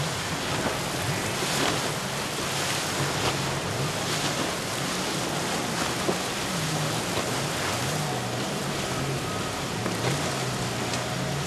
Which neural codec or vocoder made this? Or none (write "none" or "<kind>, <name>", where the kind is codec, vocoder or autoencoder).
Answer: none